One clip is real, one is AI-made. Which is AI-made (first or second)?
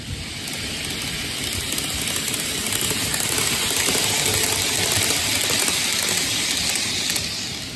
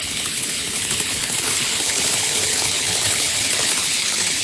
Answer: second